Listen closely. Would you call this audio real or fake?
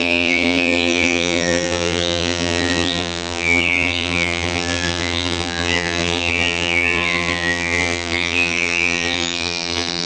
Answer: fake